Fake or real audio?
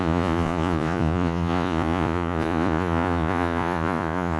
fake